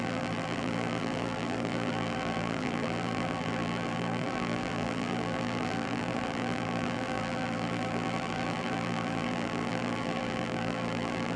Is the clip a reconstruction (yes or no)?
yes